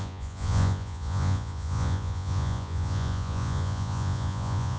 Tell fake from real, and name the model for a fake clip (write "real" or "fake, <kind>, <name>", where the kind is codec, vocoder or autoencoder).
fake, vocoder, Vocos